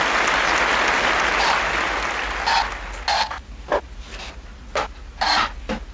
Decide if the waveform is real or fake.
real